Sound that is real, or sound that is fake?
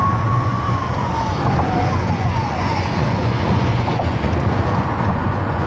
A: fake